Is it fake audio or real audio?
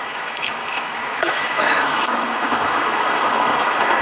fake